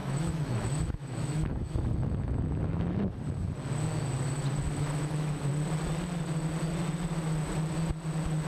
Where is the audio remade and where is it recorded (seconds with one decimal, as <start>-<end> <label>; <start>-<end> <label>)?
0.0-3.1 remade; 3.1-4.7 recorded; 4.7-5.5 remade; 5.5-8.5 recorded